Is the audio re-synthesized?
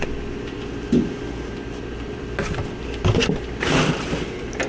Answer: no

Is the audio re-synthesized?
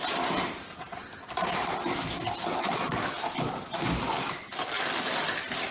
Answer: no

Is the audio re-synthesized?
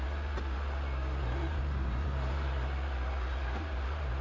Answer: no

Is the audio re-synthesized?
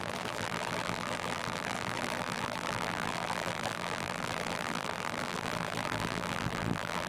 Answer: yes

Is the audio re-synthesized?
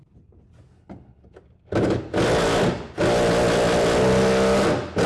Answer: no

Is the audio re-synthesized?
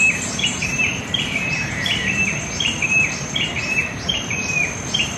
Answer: yes